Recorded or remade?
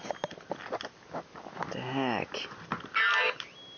recorded